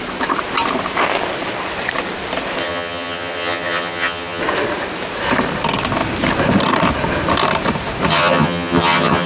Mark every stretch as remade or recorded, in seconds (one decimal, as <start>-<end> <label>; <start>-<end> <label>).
0.0-2.6 recorded; 2.6-4.4 remade; 4.4-8.1 recorded; 8.1-9.3 remade